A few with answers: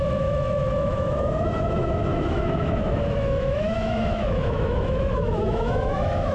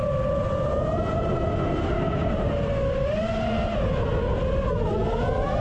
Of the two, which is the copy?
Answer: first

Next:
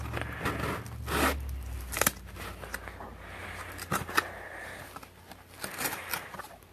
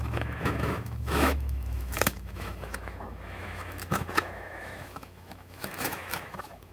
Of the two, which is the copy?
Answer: second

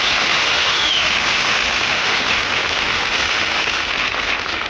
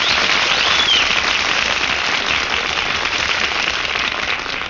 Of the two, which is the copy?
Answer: first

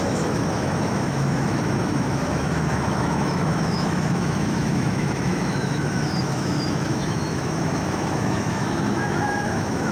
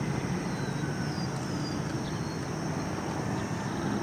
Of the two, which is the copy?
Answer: first